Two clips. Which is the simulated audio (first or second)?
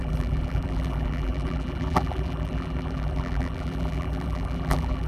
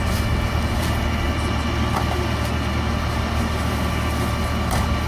first